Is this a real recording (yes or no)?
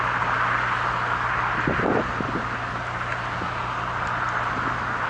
yes